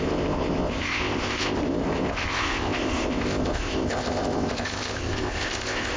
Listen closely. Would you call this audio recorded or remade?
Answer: remade